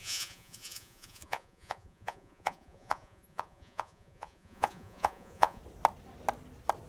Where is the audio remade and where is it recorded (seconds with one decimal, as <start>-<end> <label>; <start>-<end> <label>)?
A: 0.0-5.6 remade; 5.6-6.9 recorded